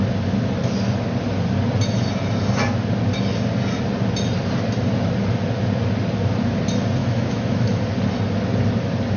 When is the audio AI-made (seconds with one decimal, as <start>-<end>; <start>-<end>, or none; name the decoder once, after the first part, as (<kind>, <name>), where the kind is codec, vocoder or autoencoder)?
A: 7.0-7.8 (autoencoder, DAC-VAE)